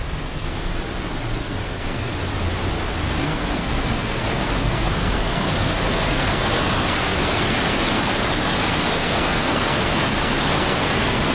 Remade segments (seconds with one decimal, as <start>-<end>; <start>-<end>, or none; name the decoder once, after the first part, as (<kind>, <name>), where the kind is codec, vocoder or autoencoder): 0.0-0.7 (codec, SNAC); 1.4-2.1; 2.9-11.3